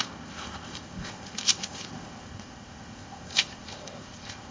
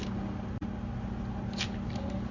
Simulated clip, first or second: first